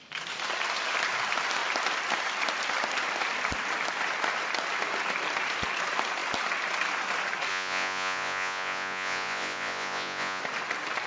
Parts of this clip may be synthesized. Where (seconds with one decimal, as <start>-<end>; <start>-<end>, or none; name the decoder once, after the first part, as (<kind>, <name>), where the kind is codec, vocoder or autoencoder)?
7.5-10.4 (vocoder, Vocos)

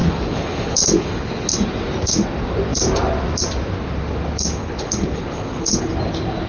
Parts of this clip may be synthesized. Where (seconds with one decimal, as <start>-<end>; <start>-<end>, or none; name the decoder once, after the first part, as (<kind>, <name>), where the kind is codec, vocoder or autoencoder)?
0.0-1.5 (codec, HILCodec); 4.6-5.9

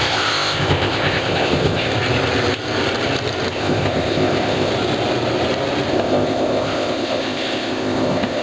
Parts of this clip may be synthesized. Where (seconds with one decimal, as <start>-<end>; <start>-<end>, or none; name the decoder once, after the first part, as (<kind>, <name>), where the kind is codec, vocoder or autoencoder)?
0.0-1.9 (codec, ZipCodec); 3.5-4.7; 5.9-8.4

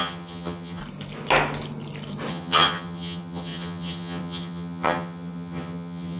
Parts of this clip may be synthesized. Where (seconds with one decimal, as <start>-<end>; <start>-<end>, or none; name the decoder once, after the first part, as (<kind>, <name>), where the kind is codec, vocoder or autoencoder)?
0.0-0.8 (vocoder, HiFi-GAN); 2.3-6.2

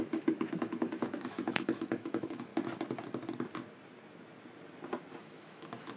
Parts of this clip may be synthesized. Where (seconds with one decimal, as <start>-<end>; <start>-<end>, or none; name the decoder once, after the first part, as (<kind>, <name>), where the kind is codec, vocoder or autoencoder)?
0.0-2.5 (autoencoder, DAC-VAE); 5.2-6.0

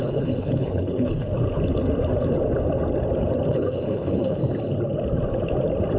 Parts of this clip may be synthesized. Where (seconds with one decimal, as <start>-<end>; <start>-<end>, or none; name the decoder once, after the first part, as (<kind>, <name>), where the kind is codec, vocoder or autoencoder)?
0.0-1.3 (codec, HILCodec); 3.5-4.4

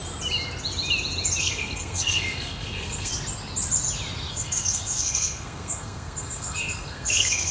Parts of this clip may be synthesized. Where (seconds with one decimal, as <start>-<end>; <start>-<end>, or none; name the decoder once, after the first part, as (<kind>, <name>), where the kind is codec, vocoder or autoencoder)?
1.4-3.1 (codec, SNAC); 4.3-7.5

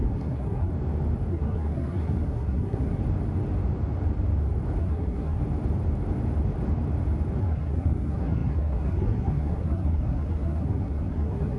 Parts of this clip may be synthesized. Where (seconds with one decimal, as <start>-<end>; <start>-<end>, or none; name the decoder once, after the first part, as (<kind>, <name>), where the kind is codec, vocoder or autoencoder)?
0.0-0.7 (codec, SNAC); 1.3-3.0; 4.8-5.4; 7.4-11.6